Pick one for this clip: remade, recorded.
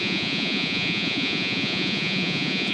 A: remade